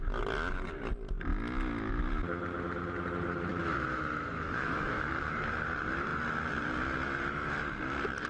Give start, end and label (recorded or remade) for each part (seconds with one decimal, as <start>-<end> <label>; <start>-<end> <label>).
0.0-3.5 recorded; 3.5-5.1 remade; 5.1-8.3 recorded